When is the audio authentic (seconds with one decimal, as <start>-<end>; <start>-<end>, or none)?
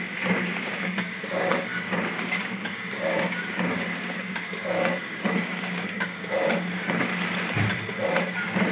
7.1-8.1